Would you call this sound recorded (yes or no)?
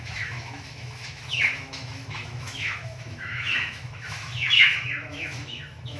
no